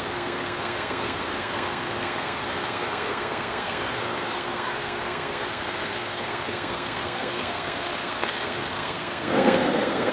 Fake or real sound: fake